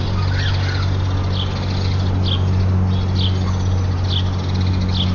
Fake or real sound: real